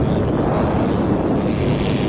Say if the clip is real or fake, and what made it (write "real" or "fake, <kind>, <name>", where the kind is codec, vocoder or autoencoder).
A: real